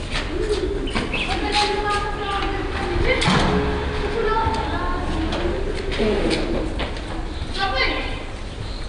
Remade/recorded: recorded